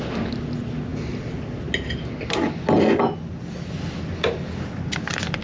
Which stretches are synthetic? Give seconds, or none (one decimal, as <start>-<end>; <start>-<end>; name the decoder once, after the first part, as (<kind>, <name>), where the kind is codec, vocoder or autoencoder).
none